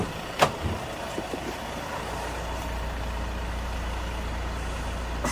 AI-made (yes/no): yes